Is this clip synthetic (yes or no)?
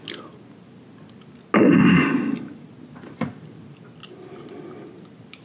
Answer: no